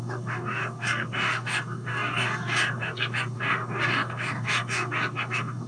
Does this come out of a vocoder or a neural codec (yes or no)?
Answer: yes